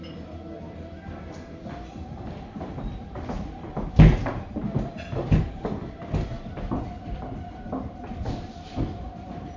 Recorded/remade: recorded